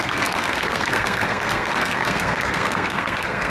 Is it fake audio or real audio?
fake